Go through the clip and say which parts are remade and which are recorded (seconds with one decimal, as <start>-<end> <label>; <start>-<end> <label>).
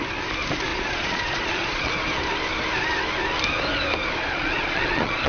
0.0-0.7 recorded; 0.7-1.9 remade; 1.9-4.2 recorded; 4.2-5.3 remade